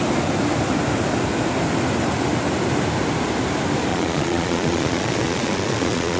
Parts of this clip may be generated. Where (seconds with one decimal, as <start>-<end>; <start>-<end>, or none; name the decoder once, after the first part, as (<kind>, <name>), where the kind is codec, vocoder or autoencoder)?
3.9-6.2 (vocoder, Vocos)